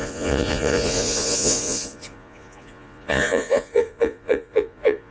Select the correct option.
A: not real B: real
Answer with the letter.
A